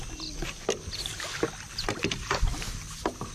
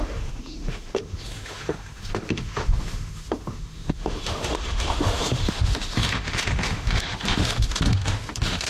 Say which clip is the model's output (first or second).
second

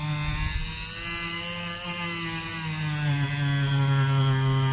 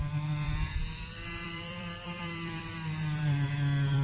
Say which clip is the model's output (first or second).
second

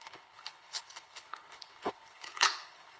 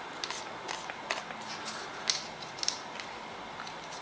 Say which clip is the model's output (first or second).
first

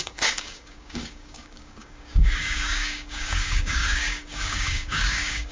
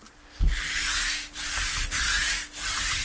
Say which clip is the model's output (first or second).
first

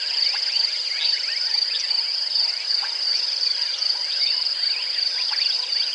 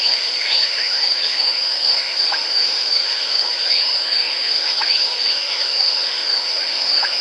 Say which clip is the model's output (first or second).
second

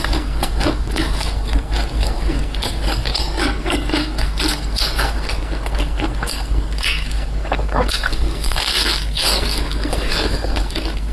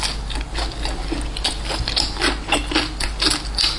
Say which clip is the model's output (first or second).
first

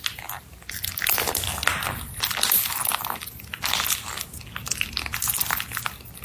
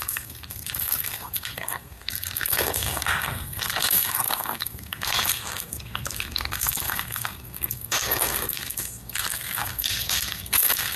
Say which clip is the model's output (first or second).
second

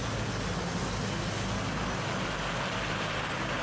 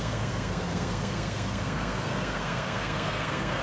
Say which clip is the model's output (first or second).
second